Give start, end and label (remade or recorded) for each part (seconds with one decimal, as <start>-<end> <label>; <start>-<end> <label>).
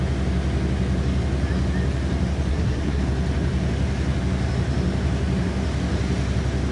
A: 0.0-2.5 recorded; 2.5-3.0 remade; 3.0-6.7 recorded